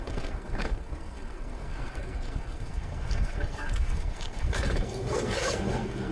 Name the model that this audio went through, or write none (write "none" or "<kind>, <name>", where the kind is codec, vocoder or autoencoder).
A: codec, SNAC